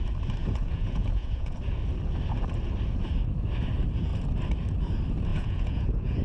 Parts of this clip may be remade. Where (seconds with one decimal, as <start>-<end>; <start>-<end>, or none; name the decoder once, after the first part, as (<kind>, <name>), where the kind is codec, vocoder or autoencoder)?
0.4-1.6 (vocoder, Vocos); 5.3-6.2